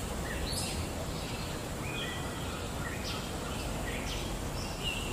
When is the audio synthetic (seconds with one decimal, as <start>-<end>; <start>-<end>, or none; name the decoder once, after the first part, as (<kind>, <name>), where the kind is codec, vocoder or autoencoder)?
0.0-0.7 (vocoder, BigVGAN v2)